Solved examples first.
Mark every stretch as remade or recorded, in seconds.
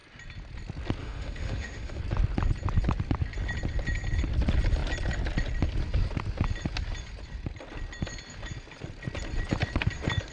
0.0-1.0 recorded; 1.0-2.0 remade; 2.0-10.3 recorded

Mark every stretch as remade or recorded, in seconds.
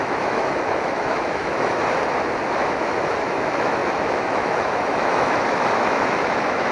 0.0-1.8 remade; 1.8-2.6 recorded; 2.6-6.7 remade